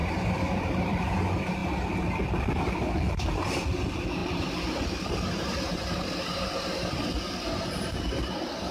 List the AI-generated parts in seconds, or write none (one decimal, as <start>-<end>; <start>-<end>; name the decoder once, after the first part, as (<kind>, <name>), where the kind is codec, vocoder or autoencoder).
0.0-1.2 (vocoder, BigVGAN v2); 4.2-7.0